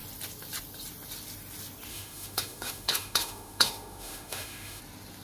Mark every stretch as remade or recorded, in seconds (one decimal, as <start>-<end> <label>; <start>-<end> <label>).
0.0-1.9 recorded; 1.9-4.8 remade; 4.8-5.2 recorded